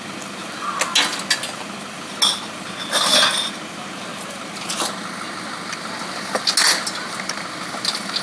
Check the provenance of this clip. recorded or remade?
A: recorded